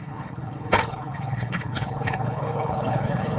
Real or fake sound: fake